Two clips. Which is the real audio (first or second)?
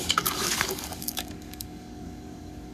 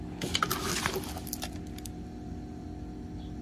second